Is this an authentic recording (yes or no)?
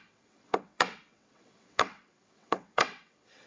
no